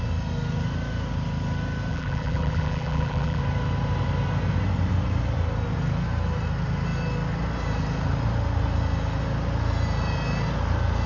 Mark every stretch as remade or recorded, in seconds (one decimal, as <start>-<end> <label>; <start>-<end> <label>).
0.0-1.9 recorded; 1.9-3.4 remade; 3.4-11.1 recorded